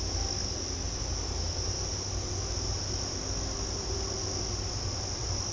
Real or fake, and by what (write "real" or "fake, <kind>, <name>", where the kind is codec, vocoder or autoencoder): real